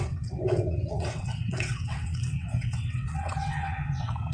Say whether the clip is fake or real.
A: fake